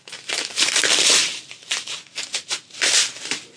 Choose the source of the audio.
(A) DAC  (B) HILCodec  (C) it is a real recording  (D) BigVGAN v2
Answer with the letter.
D